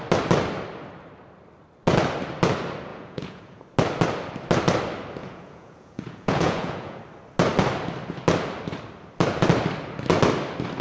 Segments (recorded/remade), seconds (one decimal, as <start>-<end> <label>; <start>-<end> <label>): 0.0-2.9 recorded; 2.9-3.6 remade; 3.6-5.2 recorded; 5.2-7.0 remade; 7.0-10.8 recorded

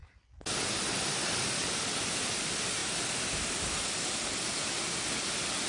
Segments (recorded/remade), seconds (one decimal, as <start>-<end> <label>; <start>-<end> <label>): 0.0-5.7 recorded

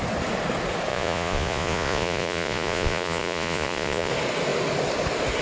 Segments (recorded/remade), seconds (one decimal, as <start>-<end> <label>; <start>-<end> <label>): 0.0-0.9 recorded; 0.9-4.1 remade; 4.1-5.4 recorded

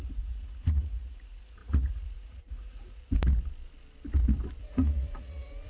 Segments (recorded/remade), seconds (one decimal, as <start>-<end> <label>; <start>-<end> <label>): 0.0-3.0 remade; 3.0-4.6 recorded; 4.6-5.7 remade

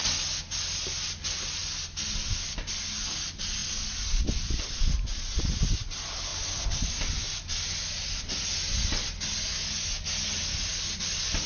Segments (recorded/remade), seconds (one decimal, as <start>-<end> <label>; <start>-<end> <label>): 0.0-11.5 recorded